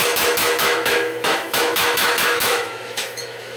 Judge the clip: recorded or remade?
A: remade